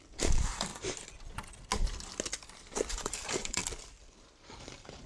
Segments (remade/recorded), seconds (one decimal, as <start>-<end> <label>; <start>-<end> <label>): 0.0-0.7 remade; 0.7-2.9 recorded; 2.9-3.6 remade; 3.6-4.6 recorded; 4.6-5.1 remade